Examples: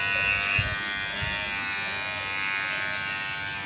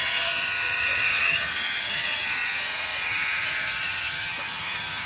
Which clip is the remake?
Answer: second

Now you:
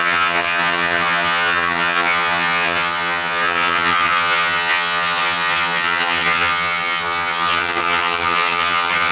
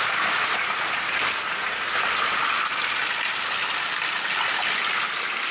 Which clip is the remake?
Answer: first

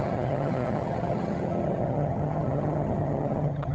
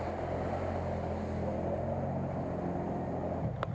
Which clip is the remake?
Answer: first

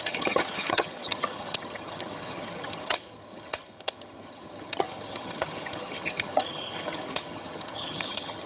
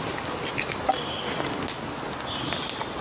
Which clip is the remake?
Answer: first